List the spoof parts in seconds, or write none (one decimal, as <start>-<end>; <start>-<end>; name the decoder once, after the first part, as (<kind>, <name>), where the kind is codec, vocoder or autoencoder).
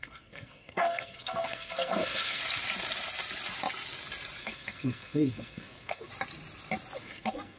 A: 0.0-2.4 (codec, SNAC); 4.4-6.1; 7.0-7.6